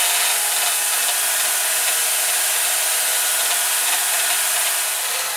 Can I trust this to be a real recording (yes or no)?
yes